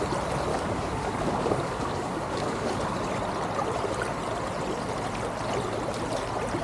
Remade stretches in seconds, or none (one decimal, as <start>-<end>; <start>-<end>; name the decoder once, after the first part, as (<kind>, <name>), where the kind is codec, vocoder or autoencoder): 0.5-2.8 (codec, DAC)